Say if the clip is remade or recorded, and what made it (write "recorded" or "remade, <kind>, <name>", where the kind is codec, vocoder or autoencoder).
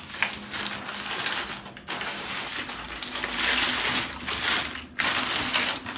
recorded